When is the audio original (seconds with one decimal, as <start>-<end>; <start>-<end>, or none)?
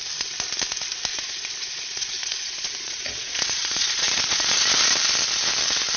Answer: 0.0-1.1; 4.7-6.0